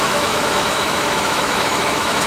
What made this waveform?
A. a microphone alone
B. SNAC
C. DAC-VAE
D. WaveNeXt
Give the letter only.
C